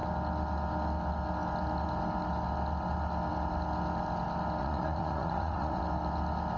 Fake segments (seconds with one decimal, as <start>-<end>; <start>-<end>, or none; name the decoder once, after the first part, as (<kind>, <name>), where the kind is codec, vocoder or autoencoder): 4.6-5.8 (vocoder, Vocos)